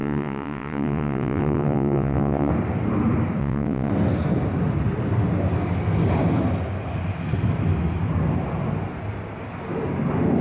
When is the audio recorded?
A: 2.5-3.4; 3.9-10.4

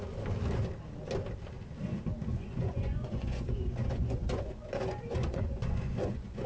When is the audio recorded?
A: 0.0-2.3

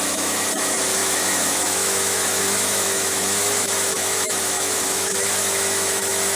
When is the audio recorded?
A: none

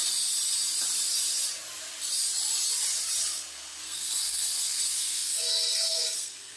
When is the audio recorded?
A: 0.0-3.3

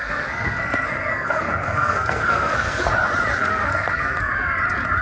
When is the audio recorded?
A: 2.9-3.3; 4.3-5.0

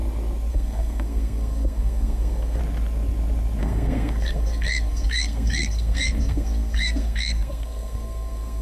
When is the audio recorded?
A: 0.0-0.5; 2.6-3.6

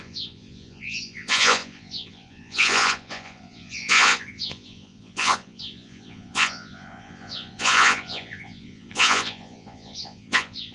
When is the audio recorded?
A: none

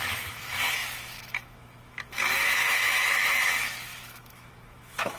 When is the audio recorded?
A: none